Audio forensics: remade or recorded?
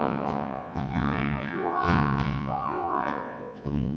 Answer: remade